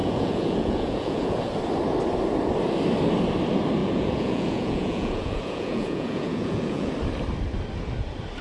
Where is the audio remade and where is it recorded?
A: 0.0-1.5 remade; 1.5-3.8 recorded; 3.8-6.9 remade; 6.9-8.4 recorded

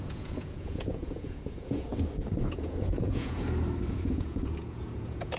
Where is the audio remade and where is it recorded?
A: 0.0-1.9 remade; 1.9-2.4 recorded; 2.4-3.4 remade; 3.4-3.9 recorded; 3.9-5.4 remade

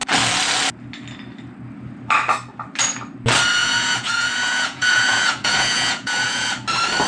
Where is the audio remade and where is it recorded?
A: 0.0-3.6 recorded; 3.6-6.5 remade; 6.5-7.1 recorded

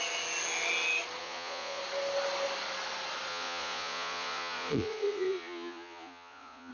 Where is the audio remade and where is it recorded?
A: 0.0-1.2 recorded; 1.2-1.8 remade; 1.8-3.3 recorded; 3.3-6.7 remade